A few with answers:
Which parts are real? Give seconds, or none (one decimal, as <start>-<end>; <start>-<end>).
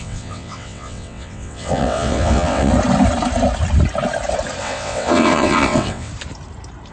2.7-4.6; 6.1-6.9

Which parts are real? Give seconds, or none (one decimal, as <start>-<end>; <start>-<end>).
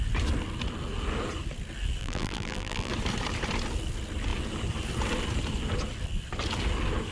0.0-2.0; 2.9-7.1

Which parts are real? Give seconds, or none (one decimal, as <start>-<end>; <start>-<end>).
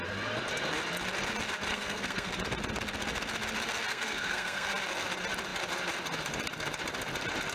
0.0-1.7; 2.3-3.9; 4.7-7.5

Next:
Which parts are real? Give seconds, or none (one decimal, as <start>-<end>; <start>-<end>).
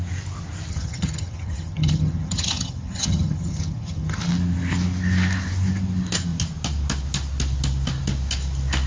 0.0-0.7; 4.2-8.9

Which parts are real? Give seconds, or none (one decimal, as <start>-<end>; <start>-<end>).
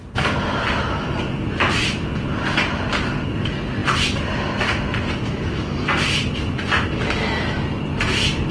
0.0-8.5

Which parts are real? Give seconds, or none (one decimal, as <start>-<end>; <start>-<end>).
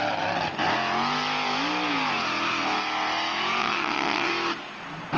0.0-3.6; 4.3-5.2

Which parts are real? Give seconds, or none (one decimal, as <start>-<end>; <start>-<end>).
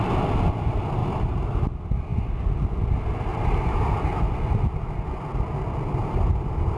0.0-1.0; 1.7-3.3; 4.2-6.0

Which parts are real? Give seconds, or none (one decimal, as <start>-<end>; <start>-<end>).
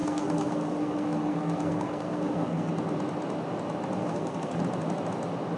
2.7-4.0; 4.6-5.6